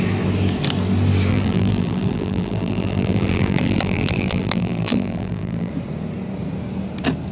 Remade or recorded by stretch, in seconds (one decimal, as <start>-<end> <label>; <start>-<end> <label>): 0.0-1.3 recorded; 1.3-5.7 remade; 5.7-7.3 recorded